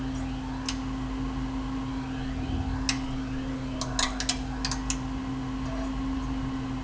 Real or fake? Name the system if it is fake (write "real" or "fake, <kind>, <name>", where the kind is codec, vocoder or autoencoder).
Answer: real